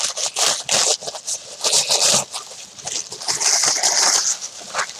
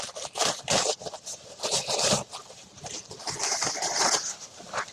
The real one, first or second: first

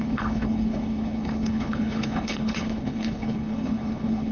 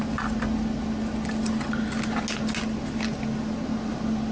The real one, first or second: second